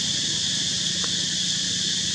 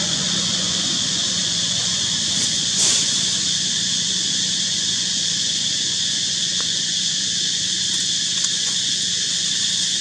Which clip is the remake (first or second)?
second